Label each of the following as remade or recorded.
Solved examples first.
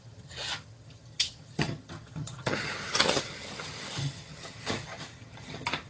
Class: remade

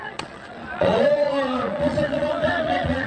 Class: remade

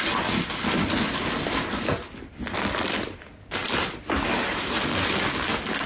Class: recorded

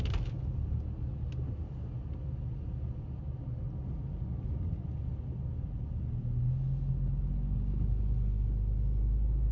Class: recorded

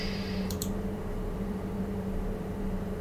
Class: remade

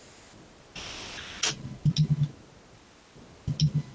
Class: recorded